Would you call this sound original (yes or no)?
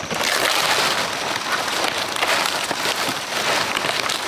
yes